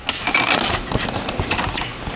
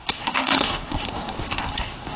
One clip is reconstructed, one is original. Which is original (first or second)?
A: first